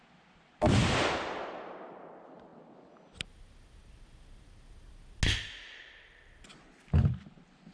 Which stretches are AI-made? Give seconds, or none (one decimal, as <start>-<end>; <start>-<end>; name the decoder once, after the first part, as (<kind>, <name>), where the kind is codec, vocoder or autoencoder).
none